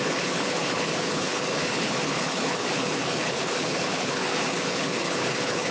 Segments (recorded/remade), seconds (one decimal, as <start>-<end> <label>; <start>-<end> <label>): 0.0-5.7 remade